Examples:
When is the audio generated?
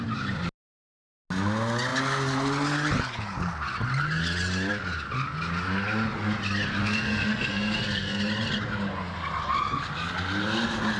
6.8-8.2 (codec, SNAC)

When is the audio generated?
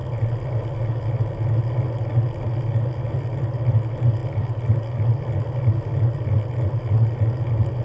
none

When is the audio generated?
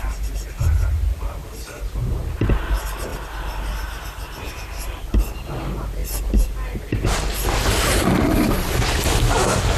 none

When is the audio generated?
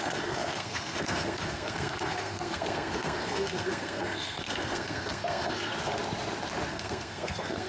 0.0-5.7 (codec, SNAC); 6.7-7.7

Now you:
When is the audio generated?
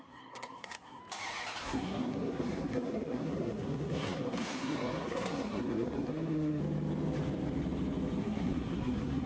0.0-1.0 (codec, SNAC); 1.6-6.6; 8.2-9.3